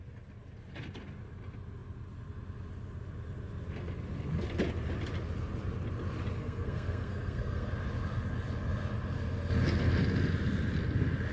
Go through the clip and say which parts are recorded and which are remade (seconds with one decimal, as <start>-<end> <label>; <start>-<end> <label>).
0.0-6.4 recorded; 6.4-7.7 remade; 7.7-11.3 recorded